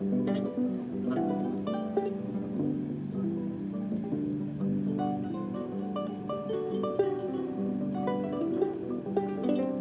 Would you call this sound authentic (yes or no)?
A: yes